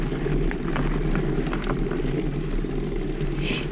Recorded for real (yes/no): yes